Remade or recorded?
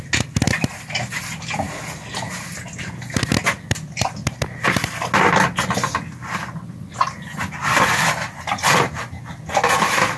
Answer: recorded